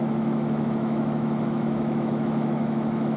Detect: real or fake fake